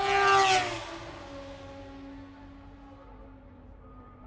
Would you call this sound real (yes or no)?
yes